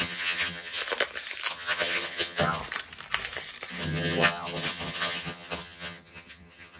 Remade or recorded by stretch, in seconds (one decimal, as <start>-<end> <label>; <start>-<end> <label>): 0.0-0.8 remade; 0.8-1.5 recorded; 1.5-2.6 remade; 2.6-3.7 recorded; 3.7-6.8 remade